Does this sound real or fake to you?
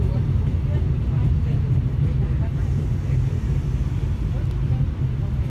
real